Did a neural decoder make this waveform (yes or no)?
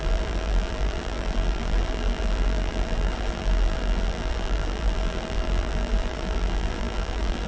yes